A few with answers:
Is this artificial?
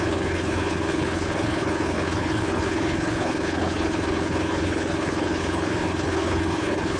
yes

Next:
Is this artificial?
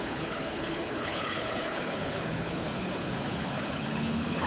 yes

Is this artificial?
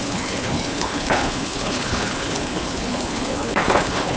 yes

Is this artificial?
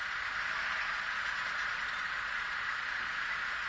no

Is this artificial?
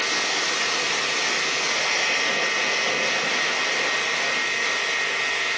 no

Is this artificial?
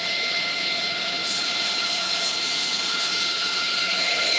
yes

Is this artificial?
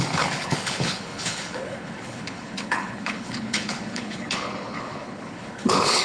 yes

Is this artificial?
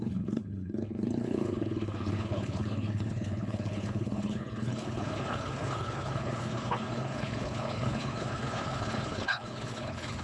yes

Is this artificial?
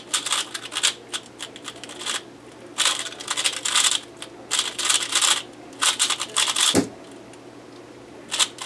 no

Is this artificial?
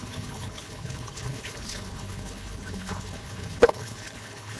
yes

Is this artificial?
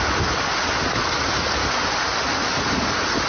no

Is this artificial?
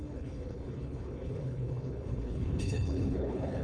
yes